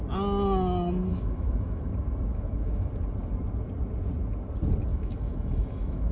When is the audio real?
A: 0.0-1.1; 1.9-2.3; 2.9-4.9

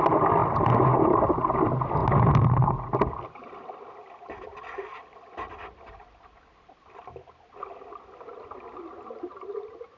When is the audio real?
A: 0.0-10.0

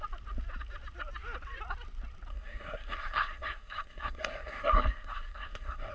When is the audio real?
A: 0.0-2.3

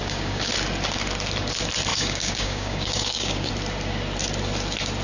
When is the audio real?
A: 0.5-1.9; 3.5-5.0

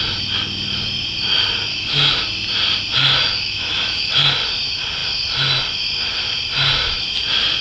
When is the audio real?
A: 0.0-1.7; 2.2-3.3; 4.1-7.6

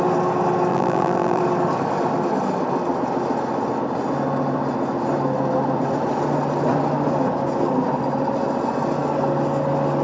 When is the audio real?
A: 0.0-0.7; 1.4-10.0

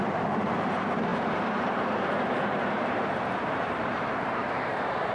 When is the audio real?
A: none